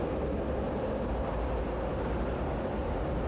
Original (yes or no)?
yes